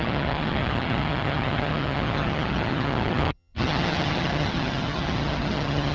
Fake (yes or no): yes